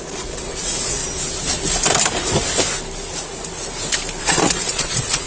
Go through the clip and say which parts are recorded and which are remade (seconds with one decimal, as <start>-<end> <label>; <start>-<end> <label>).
0.0-1.0 remade; 1.0-4.2 recorded; 4.2-5.3 remade